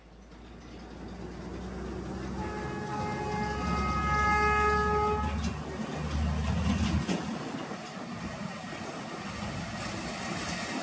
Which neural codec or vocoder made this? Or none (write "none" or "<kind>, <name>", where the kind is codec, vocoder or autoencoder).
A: none